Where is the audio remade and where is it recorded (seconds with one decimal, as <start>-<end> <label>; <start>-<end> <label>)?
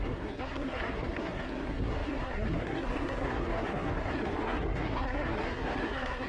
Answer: 0.0-6.3 remade